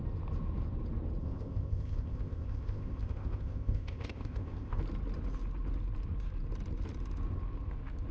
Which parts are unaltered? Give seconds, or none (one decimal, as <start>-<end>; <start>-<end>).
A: 0.0-1.2; 4.8-8.1